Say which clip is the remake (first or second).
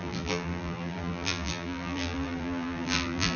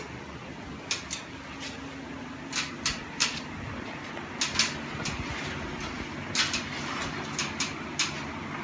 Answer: first